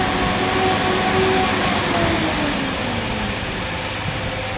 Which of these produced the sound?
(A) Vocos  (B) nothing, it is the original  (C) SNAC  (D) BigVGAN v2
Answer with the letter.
B